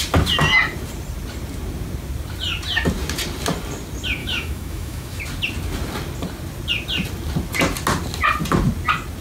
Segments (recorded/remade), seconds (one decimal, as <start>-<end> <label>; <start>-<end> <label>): 0.0-4.2 recorded; 4.2-5.2 remade; 5.2-9.2 recorded